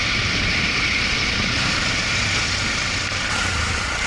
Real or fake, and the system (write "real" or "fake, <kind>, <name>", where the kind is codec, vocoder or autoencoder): fake, vocoder, BigVGAN v2